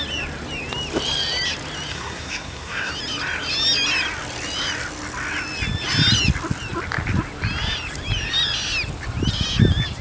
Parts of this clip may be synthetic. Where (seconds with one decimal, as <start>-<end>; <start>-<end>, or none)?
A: 1.9-2.9